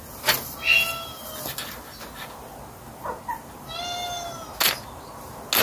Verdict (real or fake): real